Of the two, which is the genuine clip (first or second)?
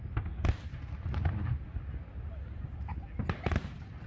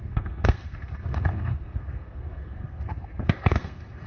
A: first